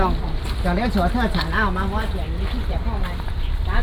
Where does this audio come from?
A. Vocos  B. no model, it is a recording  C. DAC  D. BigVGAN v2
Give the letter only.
B